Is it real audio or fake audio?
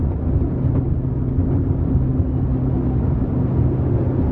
real